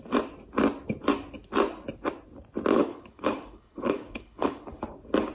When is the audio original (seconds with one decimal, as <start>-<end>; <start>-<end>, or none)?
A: 0.0-2.7; 4.8-5.3